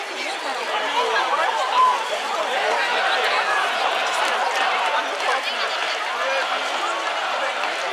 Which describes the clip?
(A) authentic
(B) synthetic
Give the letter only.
A